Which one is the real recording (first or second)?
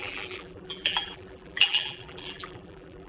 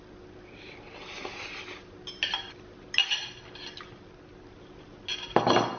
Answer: second